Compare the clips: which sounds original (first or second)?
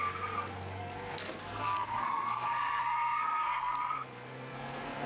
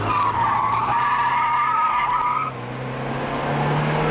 second